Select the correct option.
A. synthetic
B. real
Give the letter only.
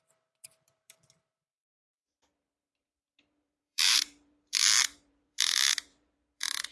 A